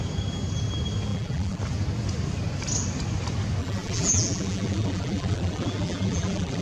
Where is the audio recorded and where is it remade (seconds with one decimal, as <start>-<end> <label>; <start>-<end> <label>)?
0.0-1.1 recorded; 1.1-1.6 remade; 1.6-3.6 recorded; 3.6-6.6 remade